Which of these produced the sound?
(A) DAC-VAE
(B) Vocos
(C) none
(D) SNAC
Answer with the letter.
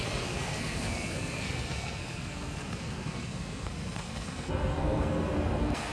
D